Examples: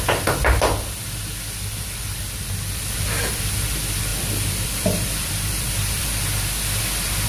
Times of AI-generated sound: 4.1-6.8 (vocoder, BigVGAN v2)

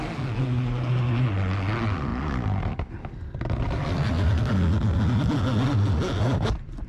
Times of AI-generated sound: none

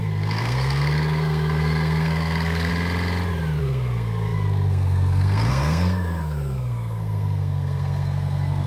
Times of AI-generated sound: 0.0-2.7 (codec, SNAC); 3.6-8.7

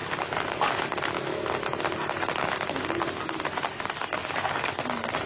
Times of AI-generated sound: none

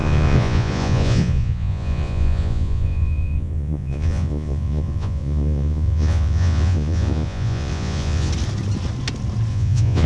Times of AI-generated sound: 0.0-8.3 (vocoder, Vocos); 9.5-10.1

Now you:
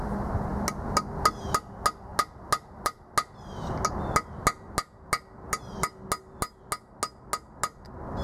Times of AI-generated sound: none

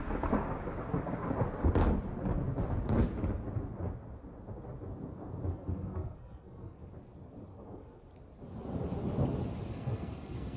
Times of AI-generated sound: 5.5-6.9 (codec, SNAC); 7.5-8.0; 9.7-10.6